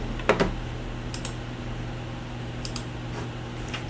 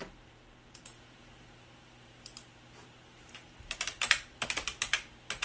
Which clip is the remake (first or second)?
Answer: second